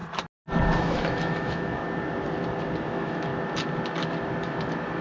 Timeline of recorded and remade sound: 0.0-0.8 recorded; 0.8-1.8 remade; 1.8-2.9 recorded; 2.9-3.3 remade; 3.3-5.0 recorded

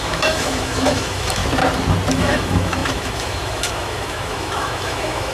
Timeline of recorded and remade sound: 0.0-1.4 remade; 1.4-2.1 recorded; 2.1-5.3 remade